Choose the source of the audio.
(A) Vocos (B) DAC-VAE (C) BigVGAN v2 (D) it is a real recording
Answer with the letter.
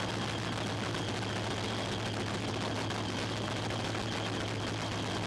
D